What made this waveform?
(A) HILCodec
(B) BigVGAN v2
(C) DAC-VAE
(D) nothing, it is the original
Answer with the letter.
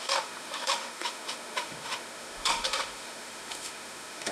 C